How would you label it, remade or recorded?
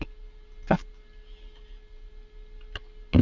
recorded